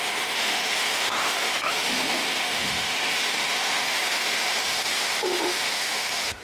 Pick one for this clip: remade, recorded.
remade